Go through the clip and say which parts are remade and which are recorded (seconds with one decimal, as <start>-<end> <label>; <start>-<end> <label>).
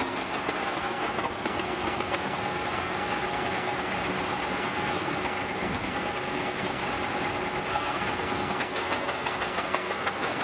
0.0-3.9 remade; 3.9-4.5 recorded; 4.5-6.8 remade; 6.8-7.7 recorded; 7.7-10.4 remade